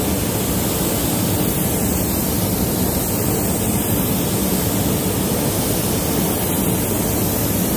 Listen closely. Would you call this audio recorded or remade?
recorded